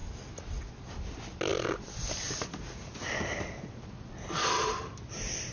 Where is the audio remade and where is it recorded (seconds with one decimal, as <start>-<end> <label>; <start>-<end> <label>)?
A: 0.0-0.9 remade; 0.9-1.5 recorded; 1.5-3.9 remade; 3.9-5.5 recorded